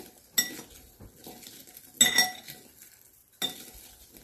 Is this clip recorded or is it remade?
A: recorded